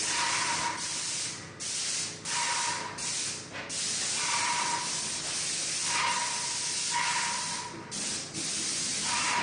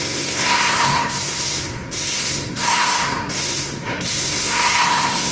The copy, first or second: second